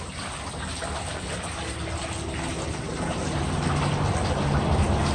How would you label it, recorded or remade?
recorded